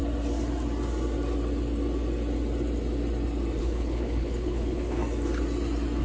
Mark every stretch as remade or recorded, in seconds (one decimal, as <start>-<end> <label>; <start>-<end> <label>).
0.0-3.6 recorded; 3.6-5.0 remade; 5.0-6.0 recorded